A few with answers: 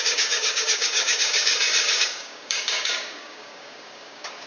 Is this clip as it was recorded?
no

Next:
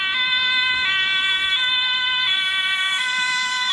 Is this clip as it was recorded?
yes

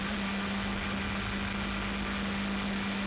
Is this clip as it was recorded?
yes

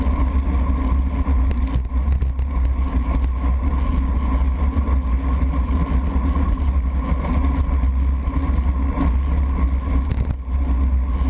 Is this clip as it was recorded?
yes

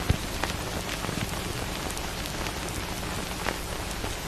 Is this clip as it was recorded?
yes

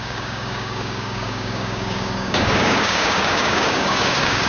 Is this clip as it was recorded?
no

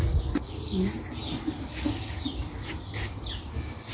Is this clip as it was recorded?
yes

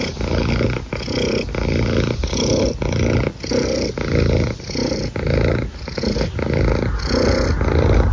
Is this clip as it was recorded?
yes